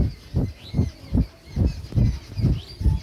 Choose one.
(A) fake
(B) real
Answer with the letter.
B